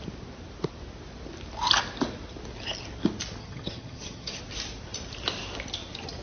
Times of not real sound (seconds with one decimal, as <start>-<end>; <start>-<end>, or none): 3.4-4.4